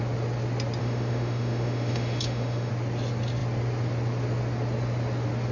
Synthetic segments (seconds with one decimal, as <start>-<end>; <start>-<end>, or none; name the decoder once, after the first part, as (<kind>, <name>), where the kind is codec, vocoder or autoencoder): 0.8-2.7 (autoencoder, DAC-VAE)